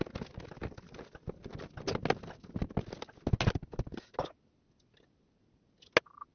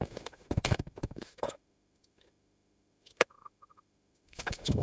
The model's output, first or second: second